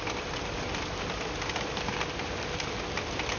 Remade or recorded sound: recorded